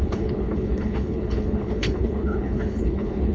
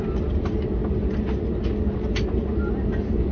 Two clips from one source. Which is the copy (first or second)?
first